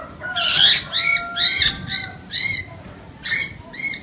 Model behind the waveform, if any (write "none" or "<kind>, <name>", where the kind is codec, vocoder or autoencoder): none